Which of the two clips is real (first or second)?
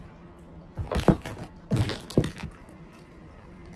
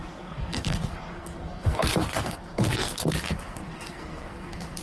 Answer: first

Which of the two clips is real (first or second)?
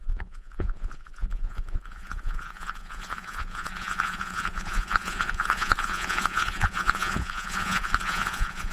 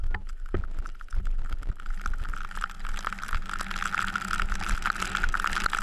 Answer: second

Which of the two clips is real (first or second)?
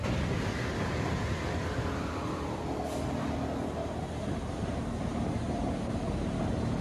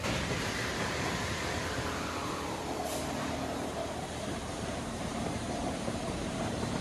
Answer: first